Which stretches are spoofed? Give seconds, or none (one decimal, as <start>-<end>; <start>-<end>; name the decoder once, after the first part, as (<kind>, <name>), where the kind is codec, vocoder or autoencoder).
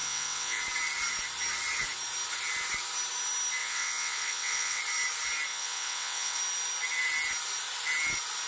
0.0-0.6 (vocoder, WaveNeXt); 3.6-4.8; 5.5-6.4